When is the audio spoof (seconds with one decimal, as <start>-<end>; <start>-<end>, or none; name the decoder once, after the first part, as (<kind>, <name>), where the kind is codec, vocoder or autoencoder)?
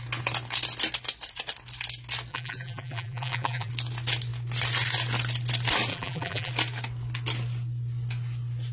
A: 2.3-3.7 (vocoder, BigVGAN v2); 5.9-6.5